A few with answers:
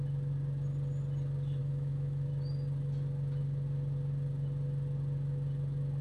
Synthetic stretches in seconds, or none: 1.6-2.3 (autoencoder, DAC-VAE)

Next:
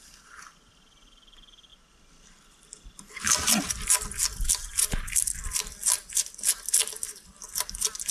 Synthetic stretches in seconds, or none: none

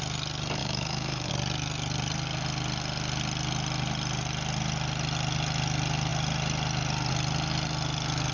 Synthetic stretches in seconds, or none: 0.6-1.3 (autoencoder, DAC-VAE)

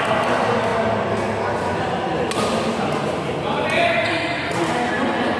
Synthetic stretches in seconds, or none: none

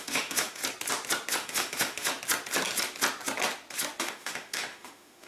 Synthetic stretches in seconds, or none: 0.0-0.6 (autoencoder, DAC-VAE); 1.3-2.1; 4.0-5.3

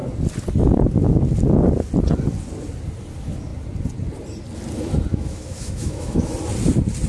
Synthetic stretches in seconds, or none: 5.1-6.3 (autoencoder, DAC-VAE)

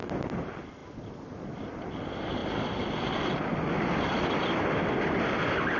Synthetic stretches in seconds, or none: none